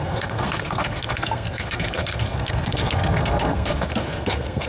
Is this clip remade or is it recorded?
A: remade